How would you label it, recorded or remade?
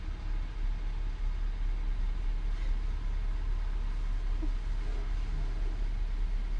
recorded